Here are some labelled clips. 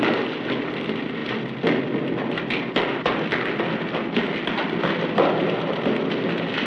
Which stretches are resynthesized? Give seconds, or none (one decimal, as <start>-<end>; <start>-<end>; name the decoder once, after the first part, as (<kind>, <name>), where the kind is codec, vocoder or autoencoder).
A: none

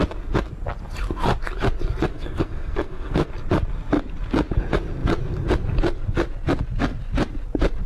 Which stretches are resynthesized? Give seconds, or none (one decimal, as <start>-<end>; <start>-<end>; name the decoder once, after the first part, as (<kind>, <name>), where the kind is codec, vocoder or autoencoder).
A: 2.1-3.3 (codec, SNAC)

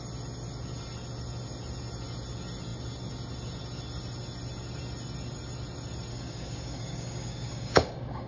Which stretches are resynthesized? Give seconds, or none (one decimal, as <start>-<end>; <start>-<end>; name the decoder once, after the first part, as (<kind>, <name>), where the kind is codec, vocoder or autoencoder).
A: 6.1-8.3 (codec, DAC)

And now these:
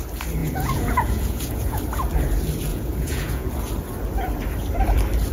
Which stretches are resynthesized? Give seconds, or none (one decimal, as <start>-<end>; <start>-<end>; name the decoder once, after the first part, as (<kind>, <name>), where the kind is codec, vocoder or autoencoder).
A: 0.4-1.8 (vocoder, Vocos); 2.7-3.5

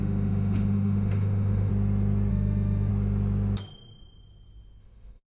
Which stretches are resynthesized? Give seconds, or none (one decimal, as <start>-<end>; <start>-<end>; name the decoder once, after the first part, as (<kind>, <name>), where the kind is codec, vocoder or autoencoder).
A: 0.0-1.7 (autoencoder, DAC-VAE); 2.3-2.9; 4.8-5.3

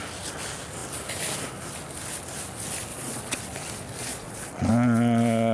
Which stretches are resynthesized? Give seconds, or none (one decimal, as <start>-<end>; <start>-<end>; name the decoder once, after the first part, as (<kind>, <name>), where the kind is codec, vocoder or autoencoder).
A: 2.9-3.4 (vocoder, Vocos); 4.0-4.7

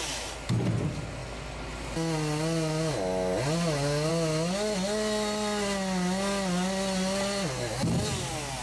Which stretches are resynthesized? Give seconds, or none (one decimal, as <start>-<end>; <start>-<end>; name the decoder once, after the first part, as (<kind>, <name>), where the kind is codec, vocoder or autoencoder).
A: none